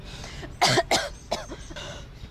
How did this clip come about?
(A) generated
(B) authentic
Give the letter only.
B